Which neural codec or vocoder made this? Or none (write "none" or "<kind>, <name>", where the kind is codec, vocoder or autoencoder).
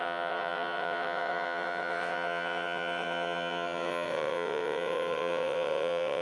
vocoder, WaveNeXt